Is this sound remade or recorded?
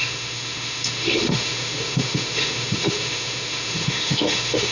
remade